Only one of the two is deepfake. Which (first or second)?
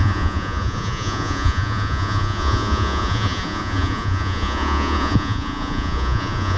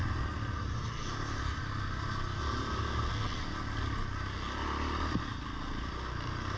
first